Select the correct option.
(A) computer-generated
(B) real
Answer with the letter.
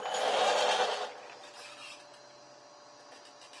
B